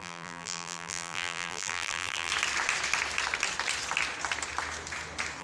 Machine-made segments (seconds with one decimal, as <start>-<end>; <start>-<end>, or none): 0.0-2.3